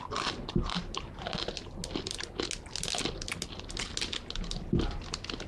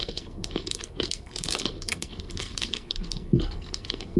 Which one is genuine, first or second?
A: first